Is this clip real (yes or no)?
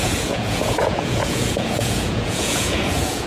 no